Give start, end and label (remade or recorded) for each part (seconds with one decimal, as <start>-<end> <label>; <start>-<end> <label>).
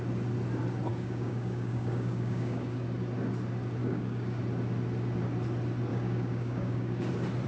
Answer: 0.0-0.9 recorded; 0.9-2.8 remade; 2.8-3.8 recorded; 3.8-4.4 remade; 4.4-5.9 recorded; 5.9-7.1 remade; 7.1-7.5 recorded